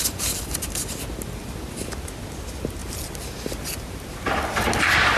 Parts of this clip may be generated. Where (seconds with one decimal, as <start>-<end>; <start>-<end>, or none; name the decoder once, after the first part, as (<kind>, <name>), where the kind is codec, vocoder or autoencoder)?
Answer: 2.8-4.4 (vocoder, BigVGAN v2)